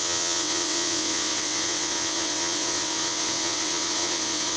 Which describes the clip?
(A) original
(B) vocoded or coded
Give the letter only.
B